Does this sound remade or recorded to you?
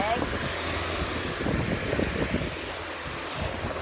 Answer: recorded